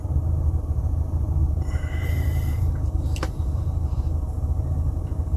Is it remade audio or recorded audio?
remade